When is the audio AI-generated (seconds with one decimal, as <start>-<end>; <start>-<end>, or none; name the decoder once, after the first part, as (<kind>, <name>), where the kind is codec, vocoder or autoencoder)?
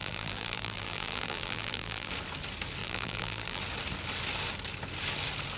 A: 0.0-2.1 (vocoder, BigVGAN v2); 2.8-3.6